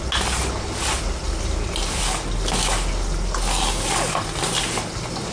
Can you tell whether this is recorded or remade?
recorded